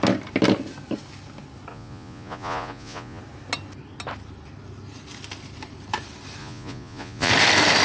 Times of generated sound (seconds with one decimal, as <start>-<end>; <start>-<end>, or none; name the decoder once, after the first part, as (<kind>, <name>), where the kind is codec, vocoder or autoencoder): 1.7-3.2 (vocoder, Vocos); 6.4-7.3